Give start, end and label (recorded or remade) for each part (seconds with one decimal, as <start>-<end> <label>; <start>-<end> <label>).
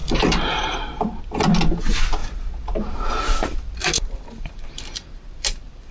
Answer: 0.0-1.2 remade; 1.2-2.2 recorded; 2.2-5.9 remade